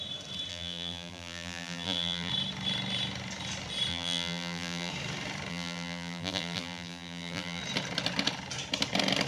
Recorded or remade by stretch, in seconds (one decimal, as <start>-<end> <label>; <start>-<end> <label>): 0.0-0.5 recorded; 0.5-2.3 remade; 2.3-3.9 recorded; 3.9-4.9 remade; 4.9-5.5 recorded; 5.5-7.6 remade; 7.6-9.3 recorded